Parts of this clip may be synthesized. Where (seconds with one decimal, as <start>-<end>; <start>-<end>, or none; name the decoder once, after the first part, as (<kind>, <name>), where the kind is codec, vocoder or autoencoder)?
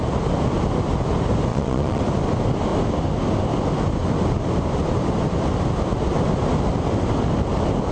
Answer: 1.5-2.0 (vocoder, Vocos)